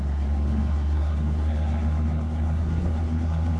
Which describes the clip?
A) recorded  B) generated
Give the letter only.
B